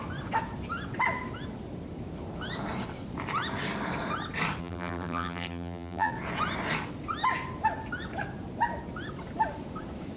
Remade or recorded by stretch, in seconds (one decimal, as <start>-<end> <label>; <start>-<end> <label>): 0.0-4.6 recorded; 4.6-6.1 remade; 6.1-10.2 recorded